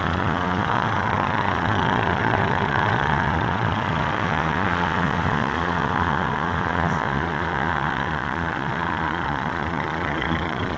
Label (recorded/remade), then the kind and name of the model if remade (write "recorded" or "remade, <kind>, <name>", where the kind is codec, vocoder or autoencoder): remade, vocoder, Vocos